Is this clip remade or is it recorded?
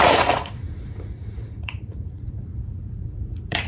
remade